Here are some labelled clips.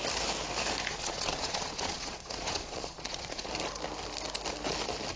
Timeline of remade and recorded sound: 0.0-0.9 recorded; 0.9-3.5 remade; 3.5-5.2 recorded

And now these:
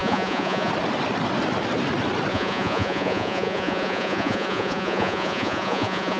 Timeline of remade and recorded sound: 0.0-0.7 remade; 0.7-2.3 recorded; 2.3-6.2 remade

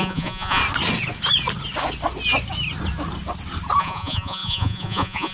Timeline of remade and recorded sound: 0.0-0.6 remade; 0.6-3.8 recorded; 3.8-5.3 remade

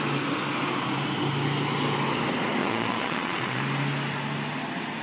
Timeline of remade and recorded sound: 0.0-2.6 recorded; 2.6-3.6 remade; 3.6-5.0 recorded

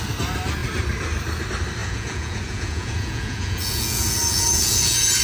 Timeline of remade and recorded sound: 0.0-1.8 recorded; 1.8-5.2 remade

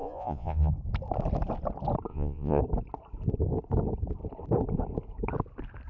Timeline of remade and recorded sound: 0.0-0.7 remade; 0.7-2.1 recorded; 2.1-2.6 remade; 2.6-5.9 recorded

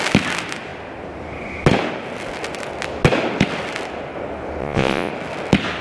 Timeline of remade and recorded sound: 0.0-4.6 recorded; 4.6-5.1 remade; 5.1-5.8 recorded